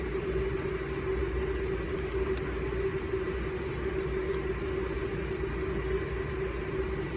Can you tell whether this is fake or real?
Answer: real